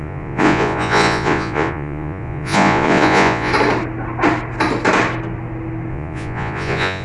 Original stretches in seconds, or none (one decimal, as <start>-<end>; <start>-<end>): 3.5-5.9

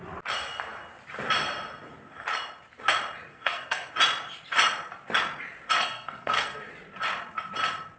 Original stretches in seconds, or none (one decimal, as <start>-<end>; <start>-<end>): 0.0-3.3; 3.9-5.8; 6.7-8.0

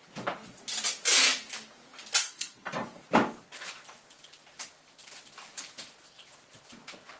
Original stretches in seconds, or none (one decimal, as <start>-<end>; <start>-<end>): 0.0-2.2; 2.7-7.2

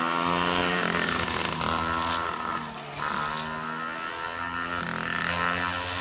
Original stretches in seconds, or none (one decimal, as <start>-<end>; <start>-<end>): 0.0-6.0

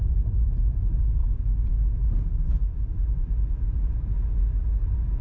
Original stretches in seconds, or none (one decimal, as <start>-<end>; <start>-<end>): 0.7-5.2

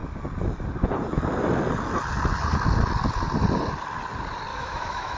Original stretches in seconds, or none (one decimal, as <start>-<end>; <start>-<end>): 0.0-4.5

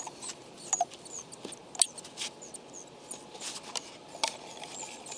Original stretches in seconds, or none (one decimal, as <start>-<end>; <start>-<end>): 0.0-5.2